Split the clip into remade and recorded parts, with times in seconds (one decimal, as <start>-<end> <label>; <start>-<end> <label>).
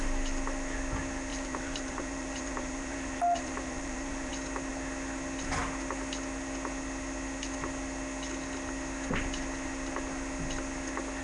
0.0-1.3 recorded; 1.3-4.3 remade; 4.3-11.2 recorded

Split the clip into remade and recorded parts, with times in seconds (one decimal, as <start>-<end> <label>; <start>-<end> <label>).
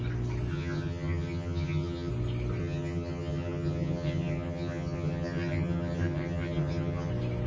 0.0-0.5 recorded; 0.5-2.1 remade; 2.1-2.6 recorded; 2.6-7.1 remade; 7.1-7.5 recorded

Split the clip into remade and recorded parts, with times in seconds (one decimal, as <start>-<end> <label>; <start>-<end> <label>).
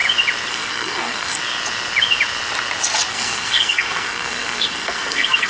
0.0-0.5 recorded; 0.5-1.4 remade; 1.4-3.1 recorded; 3.1-5.5 remade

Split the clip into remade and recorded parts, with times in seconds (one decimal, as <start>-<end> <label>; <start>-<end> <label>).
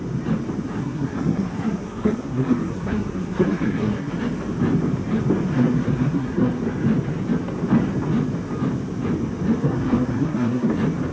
0.0-0.7 recorded; 0.7-4.1 remade; 4.1-5.5 recorded; 5.5-6.6 remade; 6.6-9.6 recorded; 9.6-10.7 remade; 10.7-11.1 recorded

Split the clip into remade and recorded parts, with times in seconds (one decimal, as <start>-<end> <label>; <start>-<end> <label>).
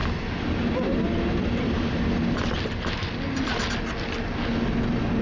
0.0-5.2 recorded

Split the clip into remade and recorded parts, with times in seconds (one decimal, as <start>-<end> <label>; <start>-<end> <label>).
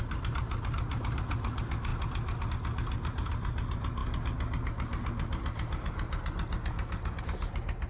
0.0-7.9 recorded